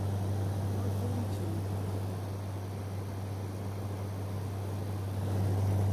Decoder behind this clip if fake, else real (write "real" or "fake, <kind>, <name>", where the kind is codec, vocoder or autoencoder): real